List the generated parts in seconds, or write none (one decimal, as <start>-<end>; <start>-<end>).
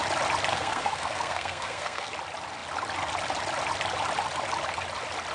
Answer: 0.5-2.1